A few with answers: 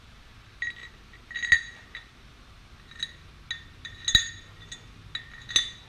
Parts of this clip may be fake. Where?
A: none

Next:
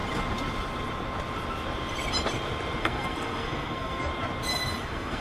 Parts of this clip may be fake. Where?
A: 2.8-4.1 (codec, SNAC); 4.8-5.2

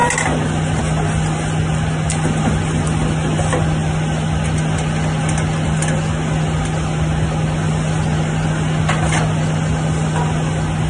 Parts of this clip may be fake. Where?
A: none

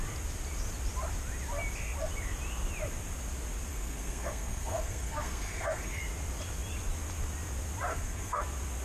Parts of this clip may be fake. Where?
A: 3.7-6.0 (codec, SNAC); 7.9-8.4

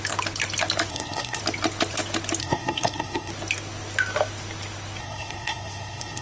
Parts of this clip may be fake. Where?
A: 0.9-1.4 (codec, SNAC); 2.4-3.3; 5.0-6.2

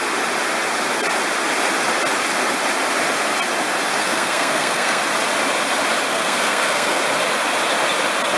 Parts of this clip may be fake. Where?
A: 4.0-5.0 (codec, SNAC); 6.1-7.0

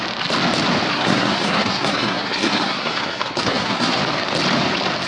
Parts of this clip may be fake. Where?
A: 0.9-4.0 (codec, SNAC)